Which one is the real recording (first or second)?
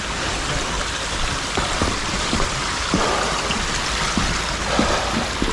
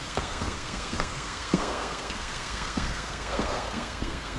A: first